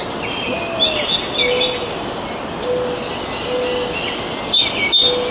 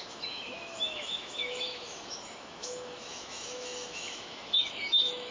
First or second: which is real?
first